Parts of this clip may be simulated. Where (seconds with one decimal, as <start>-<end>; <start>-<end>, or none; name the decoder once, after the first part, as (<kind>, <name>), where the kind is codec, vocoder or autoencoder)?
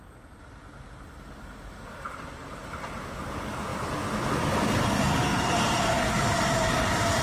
5.3-6.0 (vocoder, BigVGAN v2)